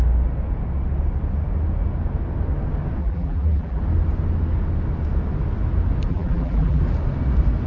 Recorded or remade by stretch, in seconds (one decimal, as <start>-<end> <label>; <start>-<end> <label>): 0.0-3.0 recorded; 3.0-3.8 remade; 3.8-6.1 recorded; 6.1-6.8 remade; 6.8-7.7 recorded